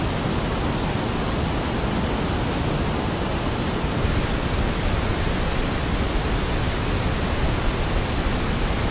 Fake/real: real